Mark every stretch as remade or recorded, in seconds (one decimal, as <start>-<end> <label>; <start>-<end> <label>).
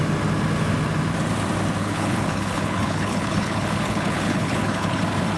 0.0-1.8 recorded; 1.8-5.0 remade; 5.0-5.4 recorded